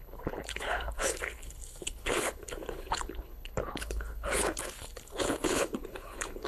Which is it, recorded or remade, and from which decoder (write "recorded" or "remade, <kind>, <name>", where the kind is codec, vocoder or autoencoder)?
remade, codec, HILCodec